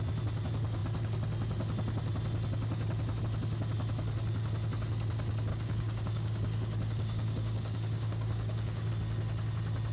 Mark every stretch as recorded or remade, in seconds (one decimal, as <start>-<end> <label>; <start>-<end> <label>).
0.0-5.5 recorded; 5.5-8.9 remade; 8.9-9.9 recorded